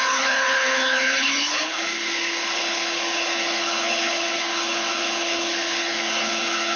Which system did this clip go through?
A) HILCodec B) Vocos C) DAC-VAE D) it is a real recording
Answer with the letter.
A